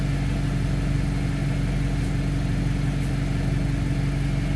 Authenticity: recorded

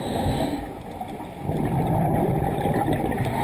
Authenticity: recorded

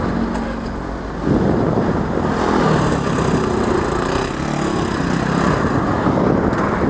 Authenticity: recorded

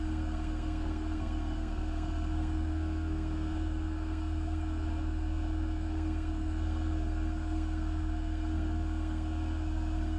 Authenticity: remade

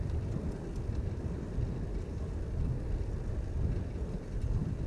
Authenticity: recorded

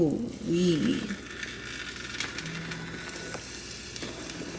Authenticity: recorded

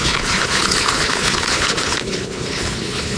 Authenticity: remade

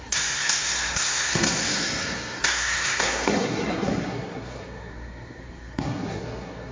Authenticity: remade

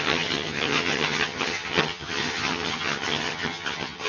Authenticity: remade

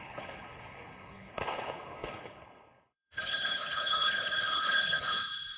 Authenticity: remade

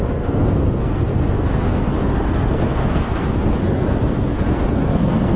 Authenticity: remade